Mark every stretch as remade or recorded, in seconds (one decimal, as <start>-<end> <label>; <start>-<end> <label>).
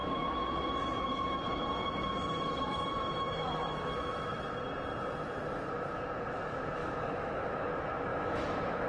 0.0-4.4 remade; 4.4-6.8 recorded; 6.8-7.7 remade; 7.7-8.1 recorded; 8.1-8.9 remade